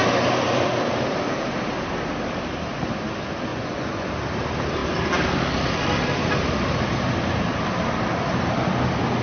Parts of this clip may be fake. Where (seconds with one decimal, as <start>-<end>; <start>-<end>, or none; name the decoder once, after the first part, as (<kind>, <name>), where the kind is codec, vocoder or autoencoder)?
3.5-4.1 (vocoder, Vocos)